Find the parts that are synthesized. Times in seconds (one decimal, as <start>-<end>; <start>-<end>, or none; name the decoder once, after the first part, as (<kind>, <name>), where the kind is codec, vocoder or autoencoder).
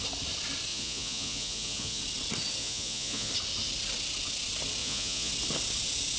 0.7-2.0 (vocoder, Vocos); 2.6-3.3; 4.8-5.3